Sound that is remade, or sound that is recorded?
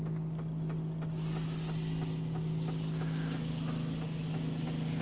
recorded